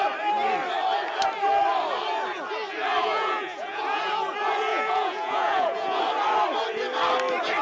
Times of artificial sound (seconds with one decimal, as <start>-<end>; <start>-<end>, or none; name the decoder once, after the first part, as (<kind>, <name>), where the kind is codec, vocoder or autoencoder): 3.0-4.0 (vocoder, Vocos); 4.7-6.0